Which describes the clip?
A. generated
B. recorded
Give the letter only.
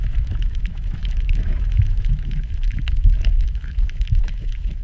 A